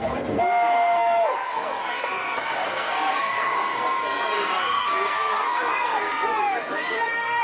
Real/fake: fake